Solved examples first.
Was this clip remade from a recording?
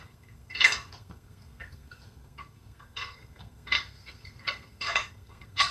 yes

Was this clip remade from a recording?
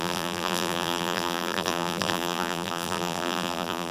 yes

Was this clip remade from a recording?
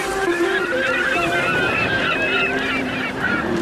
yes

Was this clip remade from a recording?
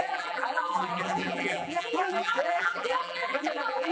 yes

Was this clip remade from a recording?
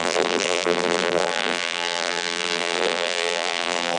yes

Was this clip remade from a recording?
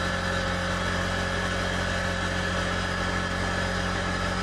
no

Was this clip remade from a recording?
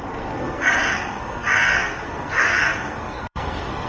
yes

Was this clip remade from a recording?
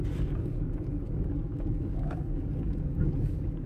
yes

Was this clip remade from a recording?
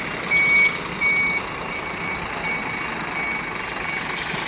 no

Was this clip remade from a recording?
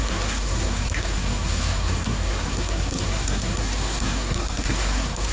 yes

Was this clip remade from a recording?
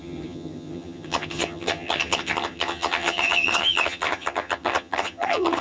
yes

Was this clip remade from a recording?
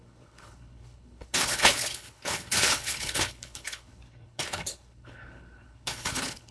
yes